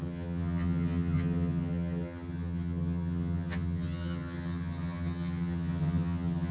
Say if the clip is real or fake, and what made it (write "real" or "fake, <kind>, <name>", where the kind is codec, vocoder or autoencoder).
fake, vocoder, HiFi-GAN